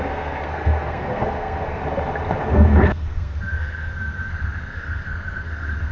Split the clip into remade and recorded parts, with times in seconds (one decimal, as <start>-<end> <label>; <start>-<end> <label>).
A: 0.0-1.8 remade; 1.8-2.4 recorded; 2.4-5.9 remade